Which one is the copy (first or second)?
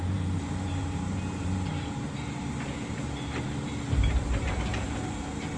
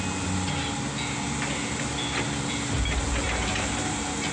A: first